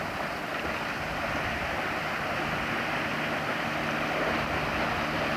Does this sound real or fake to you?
real